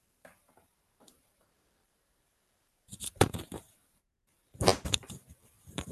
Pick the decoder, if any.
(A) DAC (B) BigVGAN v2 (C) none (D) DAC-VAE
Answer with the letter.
B